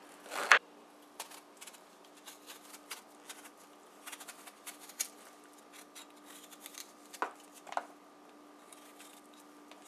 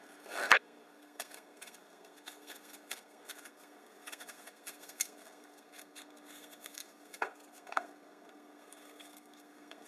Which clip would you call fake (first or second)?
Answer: second